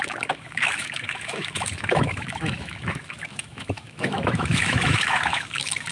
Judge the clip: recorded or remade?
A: remade